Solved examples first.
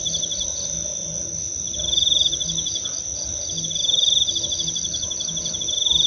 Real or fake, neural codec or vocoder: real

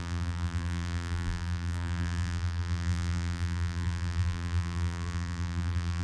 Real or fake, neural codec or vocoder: fake, vocoder, BigVGAN v2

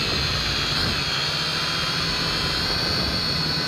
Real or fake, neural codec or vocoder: fake, vocoder, BigVGAN v2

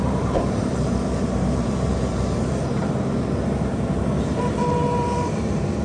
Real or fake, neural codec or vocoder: fake, vocoder, BigVGAN v2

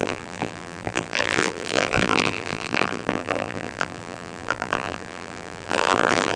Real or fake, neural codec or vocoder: fake, vocoder, BigVGAN v2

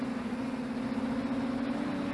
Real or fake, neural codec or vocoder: real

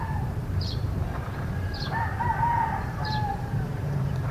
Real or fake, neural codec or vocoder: fake, vocoder, BigVGAN v2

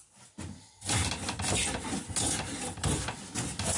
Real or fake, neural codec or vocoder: real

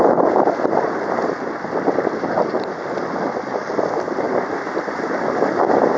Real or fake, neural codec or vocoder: real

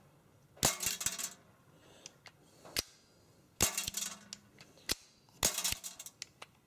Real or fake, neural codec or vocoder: real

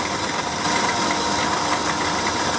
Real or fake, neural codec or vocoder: real